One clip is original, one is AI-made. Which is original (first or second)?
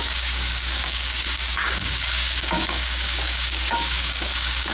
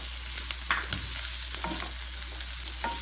second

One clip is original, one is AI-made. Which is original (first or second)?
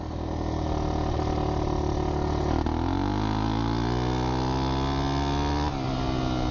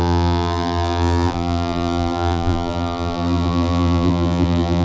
first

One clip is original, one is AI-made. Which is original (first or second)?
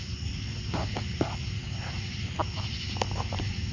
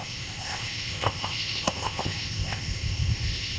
first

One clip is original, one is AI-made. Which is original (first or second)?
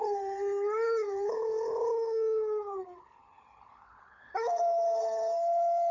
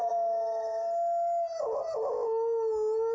second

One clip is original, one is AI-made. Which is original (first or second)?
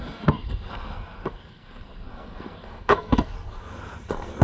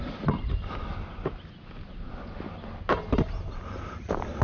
second